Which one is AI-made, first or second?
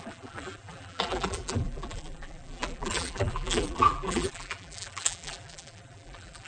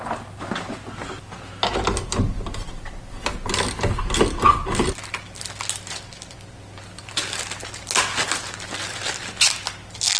first